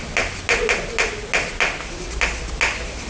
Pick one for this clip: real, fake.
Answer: real